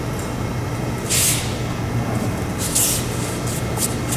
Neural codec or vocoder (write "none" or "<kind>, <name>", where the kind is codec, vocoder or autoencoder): none